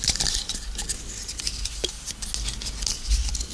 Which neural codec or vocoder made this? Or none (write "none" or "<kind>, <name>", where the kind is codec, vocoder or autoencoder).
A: none